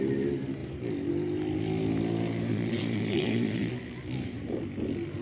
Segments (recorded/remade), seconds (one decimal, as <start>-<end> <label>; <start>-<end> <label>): 0.0-2.5 recorded; 2.5-3.7 remade; 3.7-5.2 recorded